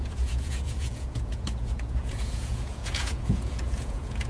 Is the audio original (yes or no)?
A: no